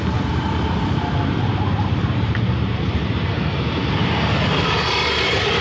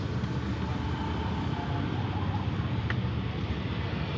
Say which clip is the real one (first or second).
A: second